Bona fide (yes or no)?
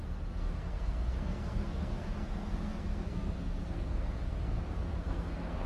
no